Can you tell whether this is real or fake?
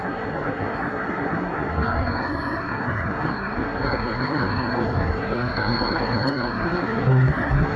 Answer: fake